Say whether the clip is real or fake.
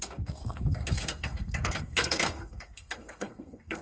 fake